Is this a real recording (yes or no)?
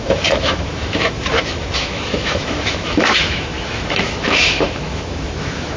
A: no